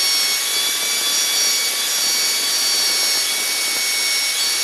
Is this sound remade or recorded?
recorded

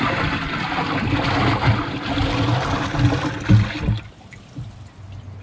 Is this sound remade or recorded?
recorded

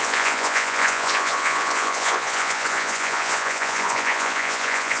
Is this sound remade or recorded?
remade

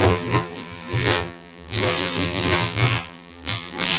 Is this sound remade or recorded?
remade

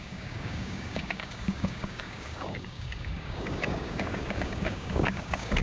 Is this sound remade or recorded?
remade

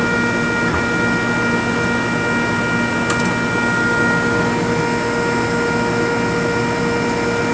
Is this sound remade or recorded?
recorded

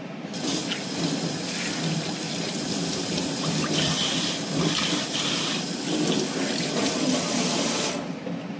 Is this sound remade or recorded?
recorded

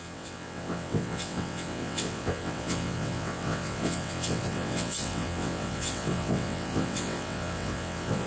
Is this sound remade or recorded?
remade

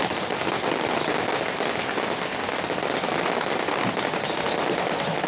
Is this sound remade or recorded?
recorded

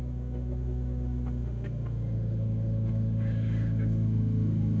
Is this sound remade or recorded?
remade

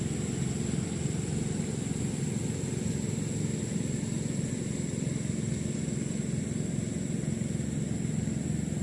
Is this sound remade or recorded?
recorded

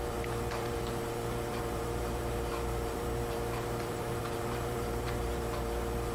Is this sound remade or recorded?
remade